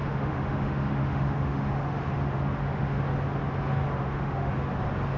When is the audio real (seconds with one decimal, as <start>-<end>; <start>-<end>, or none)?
3.0-4.0; 4.5-5.2